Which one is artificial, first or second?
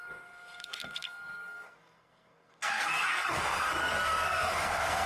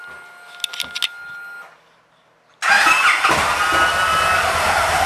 first